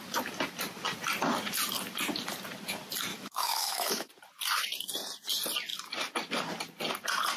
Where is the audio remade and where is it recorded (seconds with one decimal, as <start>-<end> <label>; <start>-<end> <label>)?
0.0-3.1 recorded; 3.1-4.1 remade; 4.1-7.4 recorded